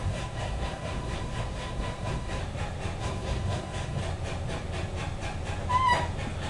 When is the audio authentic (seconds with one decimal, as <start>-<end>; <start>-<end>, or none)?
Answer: 2.4-3.0; 4.0-6.5